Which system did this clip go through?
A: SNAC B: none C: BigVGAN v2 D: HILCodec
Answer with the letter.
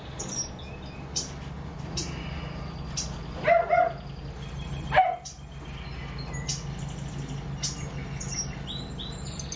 B